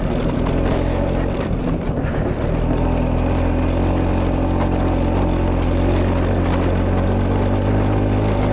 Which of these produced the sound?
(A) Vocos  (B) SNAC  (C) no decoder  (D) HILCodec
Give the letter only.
C